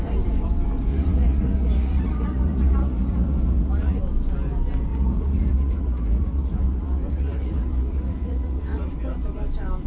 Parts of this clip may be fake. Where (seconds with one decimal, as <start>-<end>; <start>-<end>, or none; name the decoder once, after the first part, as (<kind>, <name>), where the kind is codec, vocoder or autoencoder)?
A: 0.9-4.0 (vocoder, Vocos); 4.9-8.9